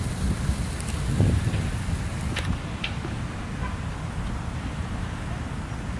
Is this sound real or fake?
real